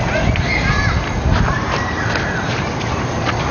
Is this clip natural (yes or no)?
no